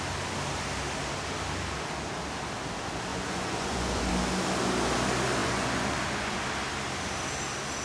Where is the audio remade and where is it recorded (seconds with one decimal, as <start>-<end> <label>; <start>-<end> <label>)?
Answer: 0.0-3.1 recorded; 3.1-4.1 remade; 4.1-5.4 recorded; 5.4-6.4 remade; 6.4-7.8 recorded